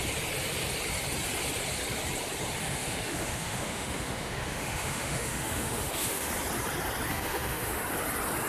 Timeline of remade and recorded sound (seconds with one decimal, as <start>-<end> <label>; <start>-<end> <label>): 0.0-2.6 recorded; 2.6-6.3 remade; 6.3-7.1 recorded; 7.1-7.8 remade; 7.8-8.5 recorded